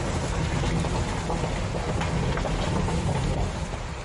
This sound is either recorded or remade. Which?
recorded